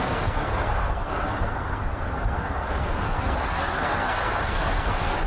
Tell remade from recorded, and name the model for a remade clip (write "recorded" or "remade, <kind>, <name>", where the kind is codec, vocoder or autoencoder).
remade, codec, SNAC